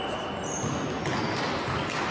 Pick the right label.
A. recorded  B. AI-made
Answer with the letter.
A